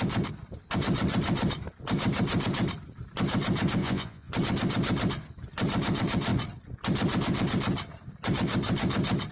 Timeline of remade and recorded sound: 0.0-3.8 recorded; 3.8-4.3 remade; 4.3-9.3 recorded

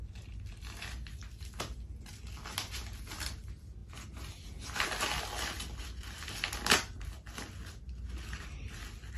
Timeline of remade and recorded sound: 0.0-9.2 recorded

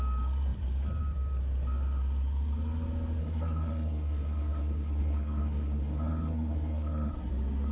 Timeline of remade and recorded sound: 0.0-3.2 recorded; 3.2-7.3 remade; 7.3-7.7 recorded